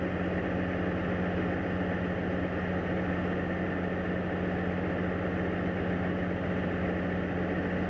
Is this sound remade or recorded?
recorded